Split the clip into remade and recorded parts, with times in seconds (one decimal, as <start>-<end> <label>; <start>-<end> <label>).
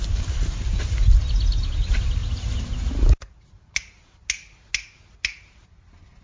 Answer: 0.0-6.2 recorded